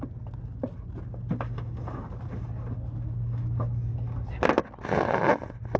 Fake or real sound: real